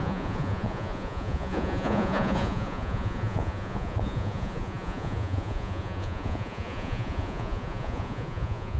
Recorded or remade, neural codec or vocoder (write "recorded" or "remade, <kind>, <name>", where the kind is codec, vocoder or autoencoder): remade, vocoder, Vocos